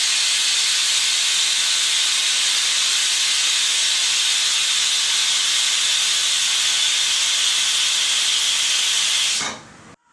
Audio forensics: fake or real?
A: real